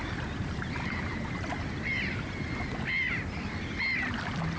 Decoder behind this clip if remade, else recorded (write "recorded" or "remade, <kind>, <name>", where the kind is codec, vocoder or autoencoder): recorded